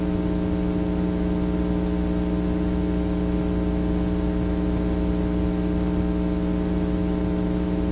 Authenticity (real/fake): real